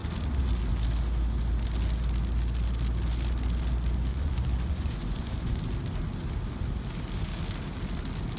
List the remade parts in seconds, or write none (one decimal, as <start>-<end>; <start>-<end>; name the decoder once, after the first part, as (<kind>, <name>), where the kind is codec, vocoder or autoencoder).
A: 4.1-5.6 (vocoder, Vocos)